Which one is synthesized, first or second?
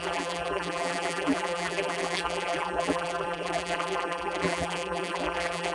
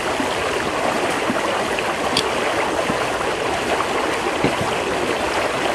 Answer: first